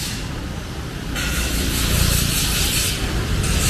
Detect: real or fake fake